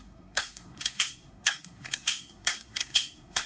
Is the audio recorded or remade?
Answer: remade